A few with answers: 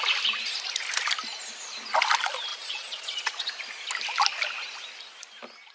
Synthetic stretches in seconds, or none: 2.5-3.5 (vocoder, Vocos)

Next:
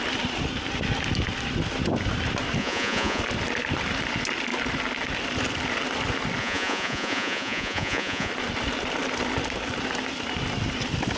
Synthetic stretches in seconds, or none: 2.6-3.2 (vocoder, Vocos); 6.4-8.3

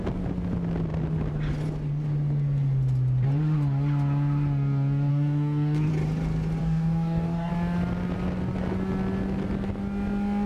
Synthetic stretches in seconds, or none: 5.1-5.9 (codec, DAC); 6.6-7.5

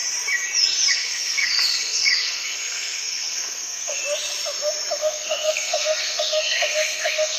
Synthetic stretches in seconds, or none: 0.9-4.0 (codec, SNAC); 5.0-7.4

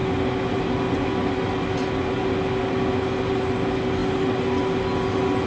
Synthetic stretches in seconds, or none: none

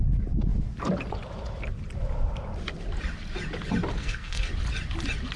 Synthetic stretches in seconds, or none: 4.0-4.5 (codec, SNAC)